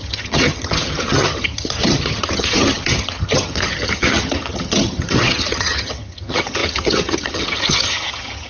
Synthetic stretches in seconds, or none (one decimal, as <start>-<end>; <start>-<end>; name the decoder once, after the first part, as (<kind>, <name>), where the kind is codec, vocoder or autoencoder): 0.0-8.5 (vocoder, HiFi-GAN)